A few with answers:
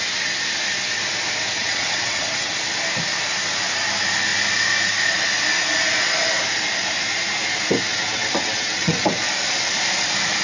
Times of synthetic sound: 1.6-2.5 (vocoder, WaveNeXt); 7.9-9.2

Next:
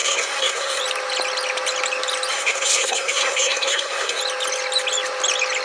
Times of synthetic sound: 0.0-0.8 (codec, SNAC); 2.3-4.2